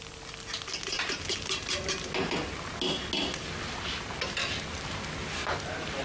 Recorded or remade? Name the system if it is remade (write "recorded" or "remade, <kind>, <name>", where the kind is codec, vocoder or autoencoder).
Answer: recorded